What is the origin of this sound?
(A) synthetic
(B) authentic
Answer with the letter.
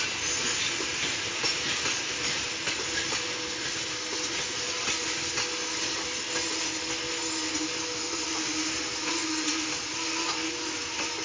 B